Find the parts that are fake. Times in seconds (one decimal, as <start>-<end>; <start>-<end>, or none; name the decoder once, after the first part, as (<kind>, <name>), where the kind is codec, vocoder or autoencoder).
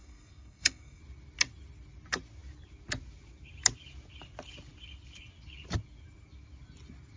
0.0-1.0 (codec, SNAC)